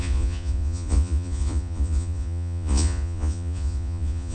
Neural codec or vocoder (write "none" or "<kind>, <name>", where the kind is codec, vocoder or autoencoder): vocoder, Vocos